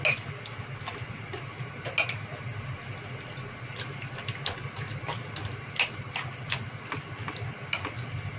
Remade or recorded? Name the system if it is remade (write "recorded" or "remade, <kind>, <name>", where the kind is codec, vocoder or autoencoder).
recorded